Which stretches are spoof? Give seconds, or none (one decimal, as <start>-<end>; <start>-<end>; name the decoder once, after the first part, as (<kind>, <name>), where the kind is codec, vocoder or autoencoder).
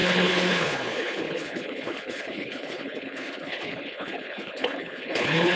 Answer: 0.0-5.6 (codec, HILCodec)